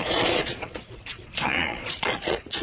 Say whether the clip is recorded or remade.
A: remade